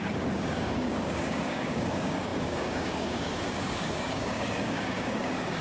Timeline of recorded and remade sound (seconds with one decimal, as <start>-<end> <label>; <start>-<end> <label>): 0.0-5.6 remade